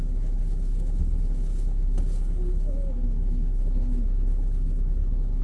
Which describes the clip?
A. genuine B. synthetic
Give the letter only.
B